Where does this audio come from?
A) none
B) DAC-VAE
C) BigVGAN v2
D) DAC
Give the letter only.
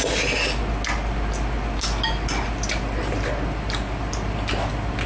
A